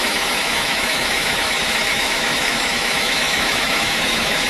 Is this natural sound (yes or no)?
no